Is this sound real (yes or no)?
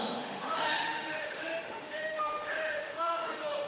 no